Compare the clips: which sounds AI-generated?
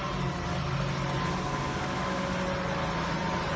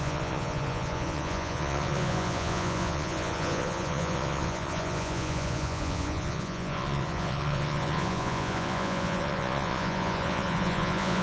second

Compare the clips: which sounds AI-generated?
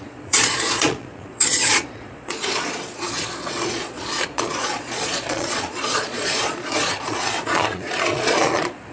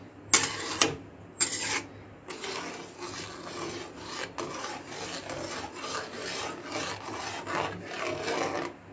first